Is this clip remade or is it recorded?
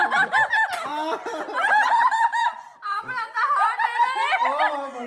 recorded